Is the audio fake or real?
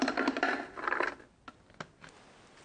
real